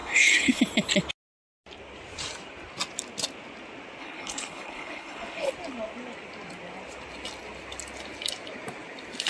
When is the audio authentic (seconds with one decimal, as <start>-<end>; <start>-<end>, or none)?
0.6-4.0; 5.5-9.3